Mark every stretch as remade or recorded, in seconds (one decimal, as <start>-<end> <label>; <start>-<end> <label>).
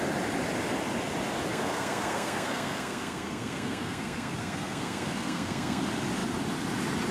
0.0-1.5 recorded; 1.5-5.8 remade; 5.8-7.1 recorded